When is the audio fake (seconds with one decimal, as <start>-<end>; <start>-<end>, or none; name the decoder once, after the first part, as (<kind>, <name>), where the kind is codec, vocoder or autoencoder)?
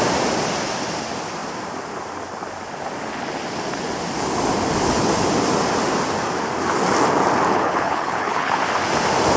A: 7.5-8.6 (codec, HILCodec)